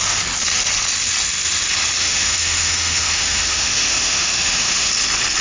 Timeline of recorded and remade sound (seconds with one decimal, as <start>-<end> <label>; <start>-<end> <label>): 0.0-2.0 recorded; 2.0-4.9 remade; 4.9-5.4 recorded